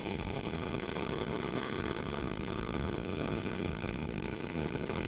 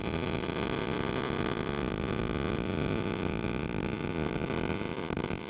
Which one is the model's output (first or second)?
first